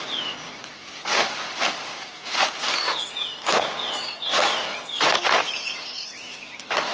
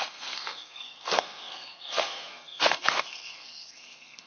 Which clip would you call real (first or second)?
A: first